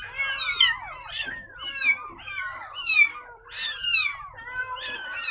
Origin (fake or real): real